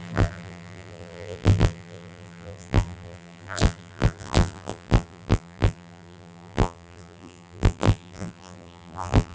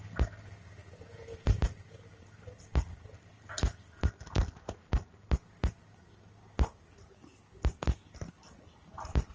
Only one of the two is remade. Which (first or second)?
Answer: first